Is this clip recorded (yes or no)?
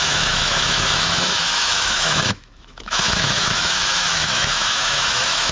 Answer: no